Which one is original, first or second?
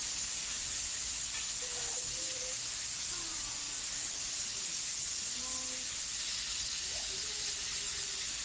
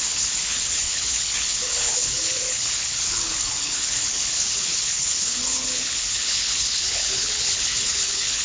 first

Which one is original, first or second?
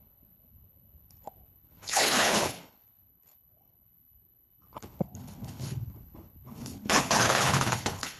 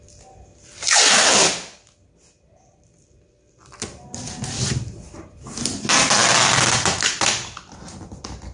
second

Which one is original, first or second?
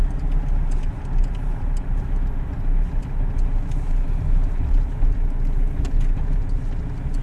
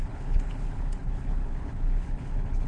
first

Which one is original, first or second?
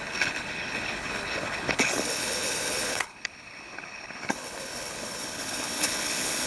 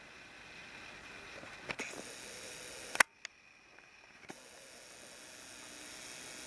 second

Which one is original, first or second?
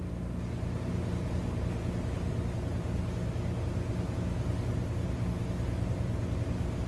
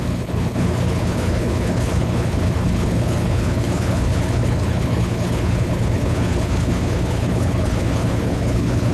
first